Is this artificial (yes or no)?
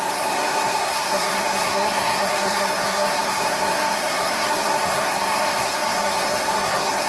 yes